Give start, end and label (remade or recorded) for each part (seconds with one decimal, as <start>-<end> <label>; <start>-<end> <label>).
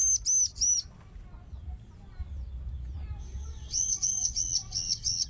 0.0-3.2 recorded; 3.2-5.3 remade